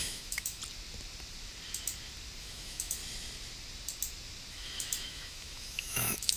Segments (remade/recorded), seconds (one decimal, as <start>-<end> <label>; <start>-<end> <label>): 0.0-0.6 remade; 0.6-2.4 recorded; 2.4-3.0 remade; 3.0-4.5 recorded; 4.5-6.4 remade